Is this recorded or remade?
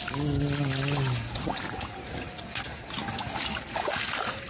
recorded